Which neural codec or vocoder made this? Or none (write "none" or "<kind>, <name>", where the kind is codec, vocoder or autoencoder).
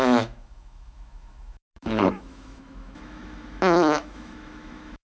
autoencoder, DAC-VAE